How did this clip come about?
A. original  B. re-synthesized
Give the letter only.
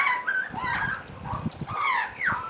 A